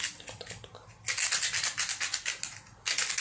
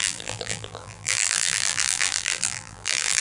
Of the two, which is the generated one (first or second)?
second